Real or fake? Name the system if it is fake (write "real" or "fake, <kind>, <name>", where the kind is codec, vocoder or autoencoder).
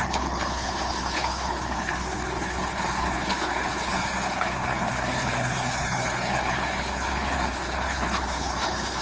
fake, codec, HILCodec